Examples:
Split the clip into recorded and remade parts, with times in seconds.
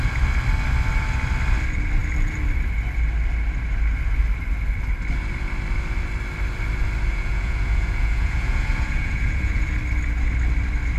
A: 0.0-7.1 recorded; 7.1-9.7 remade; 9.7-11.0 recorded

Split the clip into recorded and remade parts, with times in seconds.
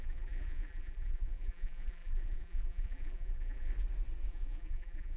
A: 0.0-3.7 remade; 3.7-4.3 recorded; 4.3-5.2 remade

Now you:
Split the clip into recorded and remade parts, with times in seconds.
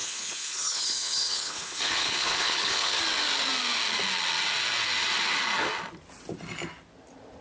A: 0.0-3.0 remade; 3.0-7.4 recorded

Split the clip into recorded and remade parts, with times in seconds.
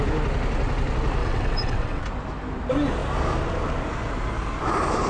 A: 0.0-1.2 recorded; 1.2-2.0 remade; 2.0-5.1 recorded